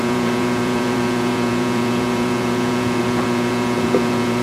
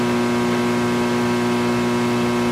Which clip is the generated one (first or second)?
first